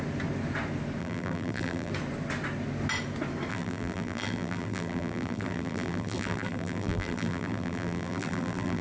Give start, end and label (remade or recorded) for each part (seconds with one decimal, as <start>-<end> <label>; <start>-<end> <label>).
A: 0.0-1.0 recorded; 1.0-1.9 remade; 1.9-3.5 recorded; 3.5-8.8 remade

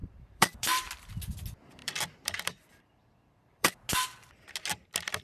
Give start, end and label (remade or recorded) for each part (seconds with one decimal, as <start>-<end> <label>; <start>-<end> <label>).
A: 0.0-1.1 remade; 1.1-1.8 recorded; 1.8-3.7 remade; 3.7-5.2 recorded